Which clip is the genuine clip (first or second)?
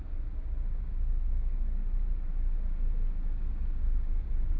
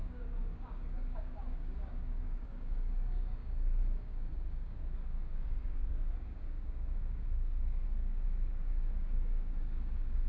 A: first